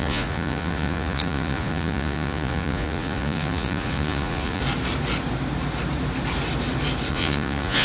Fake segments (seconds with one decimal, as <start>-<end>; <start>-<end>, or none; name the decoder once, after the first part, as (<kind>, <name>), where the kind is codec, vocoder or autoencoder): 0.0-4.6 (vocoder, Vocos); 7.1-7.8